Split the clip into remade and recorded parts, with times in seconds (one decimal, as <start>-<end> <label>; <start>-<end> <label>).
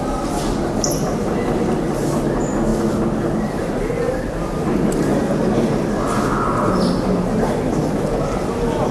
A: 0.0-8.9 recorded